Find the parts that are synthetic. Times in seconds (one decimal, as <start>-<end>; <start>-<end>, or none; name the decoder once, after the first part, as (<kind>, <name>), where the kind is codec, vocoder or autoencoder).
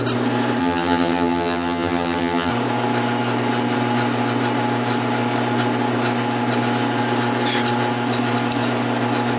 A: 0.6-2.5 (vocoder, HiFi-GAN)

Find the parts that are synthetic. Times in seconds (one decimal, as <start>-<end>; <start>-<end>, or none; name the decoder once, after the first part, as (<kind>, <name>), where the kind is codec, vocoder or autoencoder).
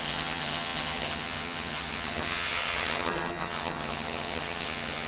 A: 0.0-5.1 (vocoder, HiFi-GAN)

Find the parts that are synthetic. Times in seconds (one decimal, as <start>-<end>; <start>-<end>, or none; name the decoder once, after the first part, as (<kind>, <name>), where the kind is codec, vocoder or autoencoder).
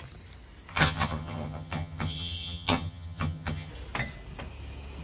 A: 0.7-3.7 (vocoder, HiFi-GAN)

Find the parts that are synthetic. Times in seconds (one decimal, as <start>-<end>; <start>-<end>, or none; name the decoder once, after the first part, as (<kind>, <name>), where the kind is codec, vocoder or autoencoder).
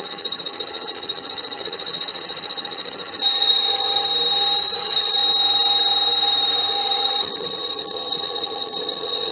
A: 0.0-4.1 (vocoder, HiFi-GAN); 4.8-5.2; 6.7-9.3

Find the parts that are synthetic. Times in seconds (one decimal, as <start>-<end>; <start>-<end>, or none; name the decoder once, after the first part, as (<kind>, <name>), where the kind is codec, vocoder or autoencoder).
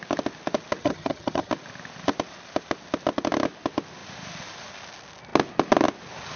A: 0.8-1.5 (vocoder, HiFi-GAN)